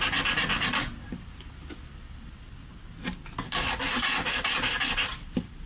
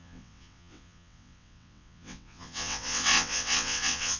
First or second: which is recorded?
first